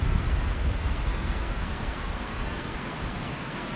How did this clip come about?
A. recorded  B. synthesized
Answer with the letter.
B